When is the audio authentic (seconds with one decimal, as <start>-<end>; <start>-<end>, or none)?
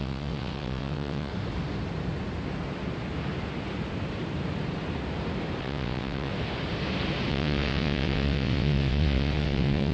1.3-5.6; 6.3-7.3